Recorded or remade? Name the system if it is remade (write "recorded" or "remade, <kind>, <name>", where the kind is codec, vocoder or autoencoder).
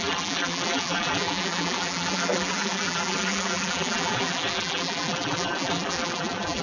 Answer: remade, vocoder, BigVGAN v2